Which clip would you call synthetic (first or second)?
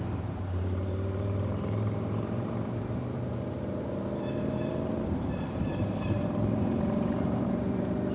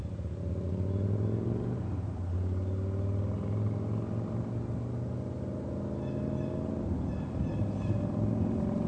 first